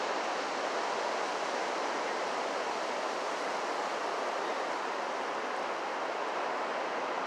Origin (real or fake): real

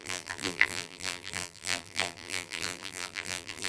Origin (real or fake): fake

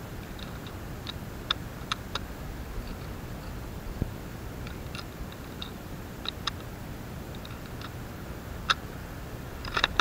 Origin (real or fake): fake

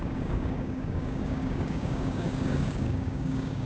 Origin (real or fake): fake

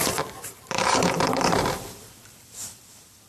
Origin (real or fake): fake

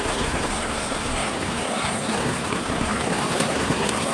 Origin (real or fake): fake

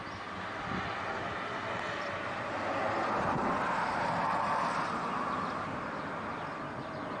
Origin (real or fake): real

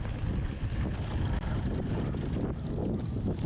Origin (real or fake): real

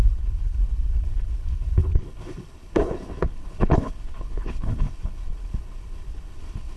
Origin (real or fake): fake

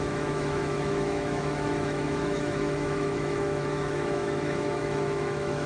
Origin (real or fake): fake